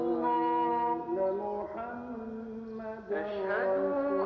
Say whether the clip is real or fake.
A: real